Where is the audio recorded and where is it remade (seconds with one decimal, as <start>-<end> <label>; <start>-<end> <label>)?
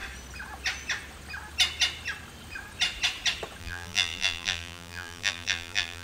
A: 0.0-3.6 recorded; 3.6-6.0 remade